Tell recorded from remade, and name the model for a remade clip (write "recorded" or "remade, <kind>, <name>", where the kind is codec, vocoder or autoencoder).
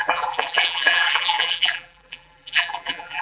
remade, vocoder, BigVGAN v2